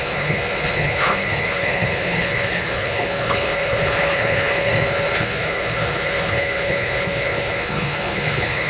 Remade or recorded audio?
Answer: remade